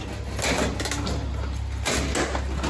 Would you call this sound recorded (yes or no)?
yes